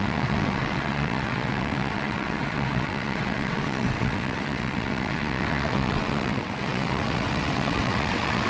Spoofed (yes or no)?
yes